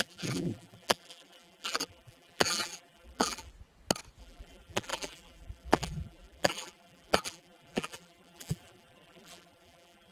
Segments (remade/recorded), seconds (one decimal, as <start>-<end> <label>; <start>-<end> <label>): 0.0-3.5 remade; 3.5-4.2 recorded; 4.2-10.1 remade